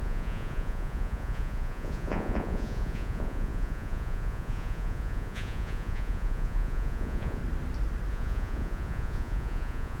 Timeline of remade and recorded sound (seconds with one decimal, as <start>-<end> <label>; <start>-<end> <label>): 0.0-7.4 remade; 7.4-8.1 recorded; 8.1-10.0 remade